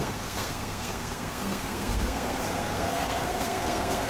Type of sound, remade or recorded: remade